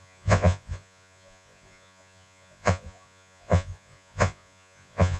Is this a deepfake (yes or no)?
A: yes